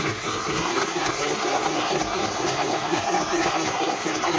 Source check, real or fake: fake